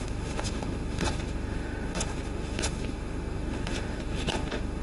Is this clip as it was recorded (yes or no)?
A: no